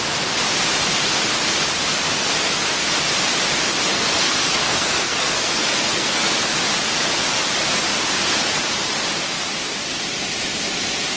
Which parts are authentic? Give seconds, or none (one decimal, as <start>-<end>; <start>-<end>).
0.0-3.9; 6.3-11.2